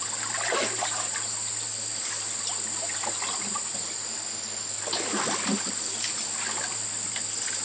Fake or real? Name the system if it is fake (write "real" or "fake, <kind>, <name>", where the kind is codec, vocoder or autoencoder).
real